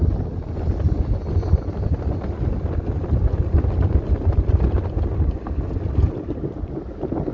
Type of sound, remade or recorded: recorded